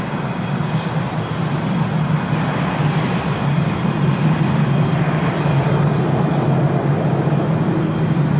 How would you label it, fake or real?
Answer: real